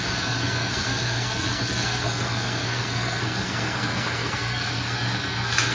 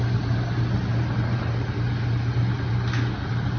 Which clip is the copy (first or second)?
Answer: first